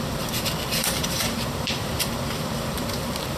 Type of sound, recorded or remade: remade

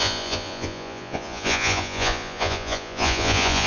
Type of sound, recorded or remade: remade